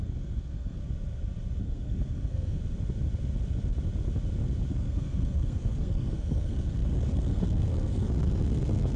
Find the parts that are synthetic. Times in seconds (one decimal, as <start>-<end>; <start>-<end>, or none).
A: 0.0-0.8; 1.6-2.6; 4.7-9.0